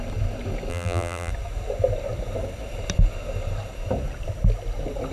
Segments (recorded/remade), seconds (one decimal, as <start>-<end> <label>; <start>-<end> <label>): 0.0-0.7 recorded; 0.7-1.3 remade; 1.3-5.1 recorded